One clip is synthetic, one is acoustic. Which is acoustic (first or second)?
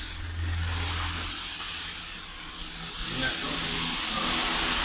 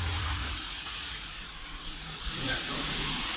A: first